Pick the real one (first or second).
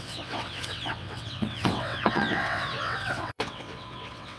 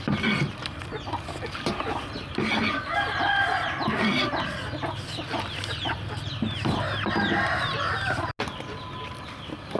second